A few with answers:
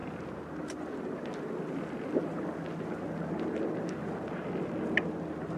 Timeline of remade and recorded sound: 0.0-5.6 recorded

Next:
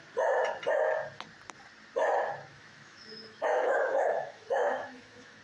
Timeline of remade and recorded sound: 0.0-2.5 recorded; 2.5-5.4 remade